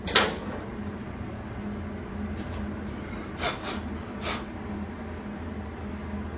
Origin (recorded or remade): recorded